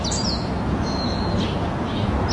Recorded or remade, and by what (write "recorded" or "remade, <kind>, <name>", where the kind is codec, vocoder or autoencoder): recorded